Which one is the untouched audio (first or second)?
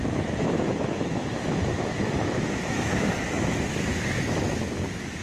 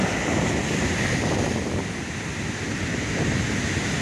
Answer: second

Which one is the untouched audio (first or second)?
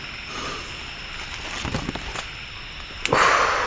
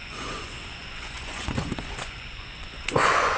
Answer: first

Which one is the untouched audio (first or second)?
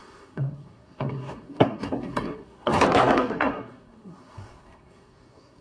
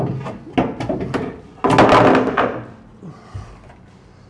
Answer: second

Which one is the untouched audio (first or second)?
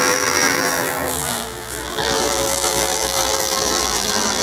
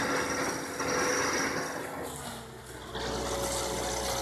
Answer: second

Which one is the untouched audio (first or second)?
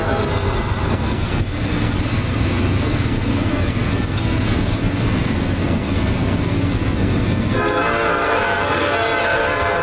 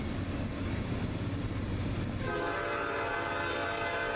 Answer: second